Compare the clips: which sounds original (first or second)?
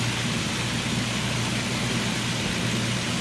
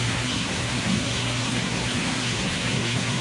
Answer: first